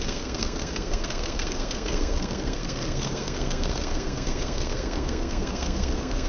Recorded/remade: remade